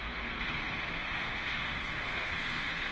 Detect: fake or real fake